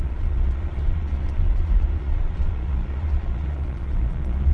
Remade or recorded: remade